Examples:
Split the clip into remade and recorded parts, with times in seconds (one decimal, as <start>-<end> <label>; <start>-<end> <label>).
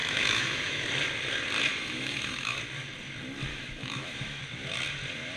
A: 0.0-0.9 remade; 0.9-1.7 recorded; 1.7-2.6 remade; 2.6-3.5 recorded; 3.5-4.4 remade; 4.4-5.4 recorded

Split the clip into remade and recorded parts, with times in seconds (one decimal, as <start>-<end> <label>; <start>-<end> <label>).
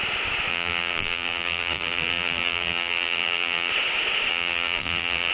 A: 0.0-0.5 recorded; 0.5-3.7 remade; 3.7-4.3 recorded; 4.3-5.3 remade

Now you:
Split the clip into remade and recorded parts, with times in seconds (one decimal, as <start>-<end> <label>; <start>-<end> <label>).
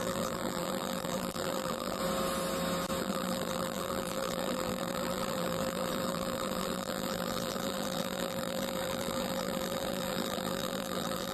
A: 0.0-2.0 remade; 2.0-3.0 recorded; 3.0-11.3 remade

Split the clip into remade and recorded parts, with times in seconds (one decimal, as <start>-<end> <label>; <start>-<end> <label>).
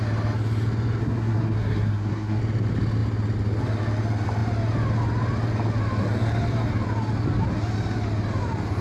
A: 0.0-1.0 recorded; 1.0-2.4 remade; 2.4-8.8 recorded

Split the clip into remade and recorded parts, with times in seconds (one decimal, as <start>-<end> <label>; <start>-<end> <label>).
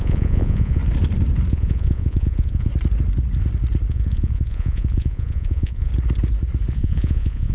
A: 0.0-0.8 remade; 0.8-1.5 recorded; 1.5-2.7 remade; 2.7-3.9 recorded; 3.9-5.9 remade; 5.9-6.7 recorded; 6.7-7.5 remade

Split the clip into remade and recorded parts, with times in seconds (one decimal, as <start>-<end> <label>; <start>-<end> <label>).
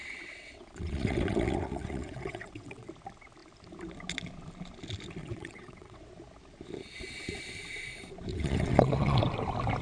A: 0.0-2.9 remade; 2.9-5.2 recorded; 5.2-6.1 remade; 6.1-8.3 recorded; 8.3-9.2 remade; 9.2-9.8 recorded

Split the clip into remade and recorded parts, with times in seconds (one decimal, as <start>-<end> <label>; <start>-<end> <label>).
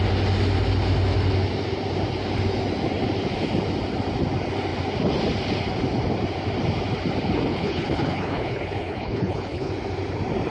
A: 0.0-7.5 recorded; 7.5-9.7 remade; 9.7-10.5 recorded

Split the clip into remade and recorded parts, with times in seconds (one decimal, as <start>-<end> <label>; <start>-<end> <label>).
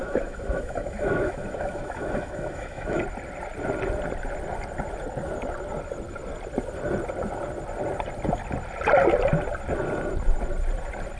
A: 0.0-3.0 remade; 3.0-11.2 recorded